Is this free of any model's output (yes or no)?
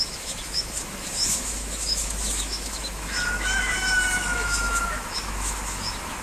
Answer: no